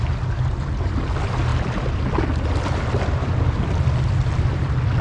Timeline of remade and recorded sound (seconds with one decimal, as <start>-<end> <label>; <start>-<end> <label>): 0.0-5.0 recorded

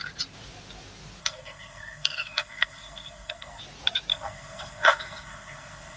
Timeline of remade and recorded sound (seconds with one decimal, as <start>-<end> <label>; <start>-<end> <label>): 0.0-1.2 recorded; 1.2-3.6 remade; 3.6-4.1 recorded; 4.1-6.0 remade